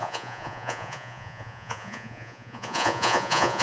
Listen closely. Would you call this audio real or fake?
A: fake